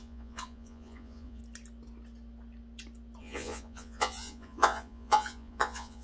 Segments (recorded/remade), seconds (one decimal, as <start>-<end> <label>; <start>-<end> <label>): 0.0-1.4 remade; 1.4-3.2 recorded; 3.2-6.0 remade